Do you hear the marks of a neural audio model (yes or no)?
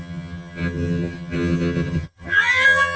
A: yes